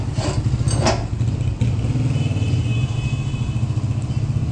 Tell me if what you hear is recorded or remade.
recorded